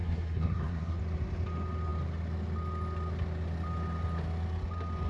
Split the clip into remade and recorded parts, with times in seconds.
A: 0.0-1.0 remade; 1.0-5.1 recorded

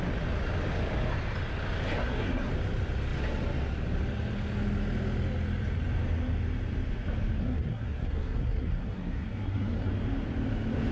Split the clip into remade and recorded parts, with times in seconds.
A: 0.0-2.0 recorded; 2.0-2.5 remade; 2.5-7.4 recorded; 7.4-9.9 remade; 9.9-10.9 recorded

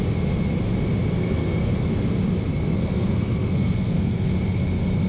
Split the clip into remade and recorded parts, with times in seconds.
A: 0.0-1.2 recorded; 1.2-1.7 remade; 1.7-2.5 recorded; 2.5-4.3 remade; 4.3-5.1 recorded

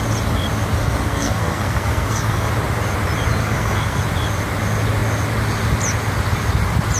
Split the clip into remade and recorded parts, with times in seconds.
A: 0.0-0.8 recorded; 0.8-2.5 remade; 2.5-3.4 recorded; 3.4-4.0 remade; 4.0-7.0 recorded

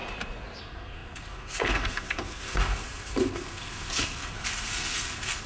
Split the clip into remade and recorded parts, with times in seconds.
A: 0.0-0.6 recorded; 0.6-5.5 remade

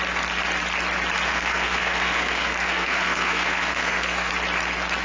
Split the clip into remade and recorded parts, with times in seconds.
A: 0.0-1.3 recorded; 1.3-4.3 remade; 4.3-5.0 recorded